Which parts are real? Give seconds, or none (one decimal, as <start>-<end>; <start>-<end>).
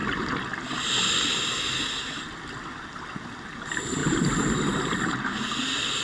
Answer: 0.0-6.0